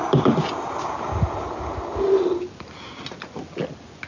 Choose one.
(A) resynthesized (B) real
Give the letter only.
B